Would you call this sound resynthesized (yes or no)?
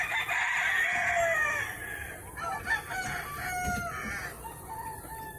no